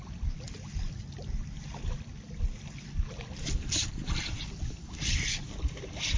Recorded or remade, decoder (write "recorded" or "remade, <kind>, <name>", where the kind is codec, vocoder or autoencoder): recorded